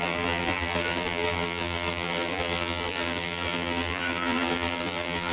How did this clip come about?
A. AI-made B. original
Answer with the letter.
A